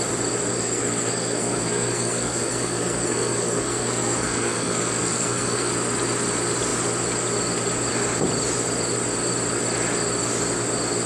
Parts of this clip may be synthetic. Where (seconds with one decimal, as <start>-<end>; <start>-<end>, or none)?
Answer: 0.5-5.7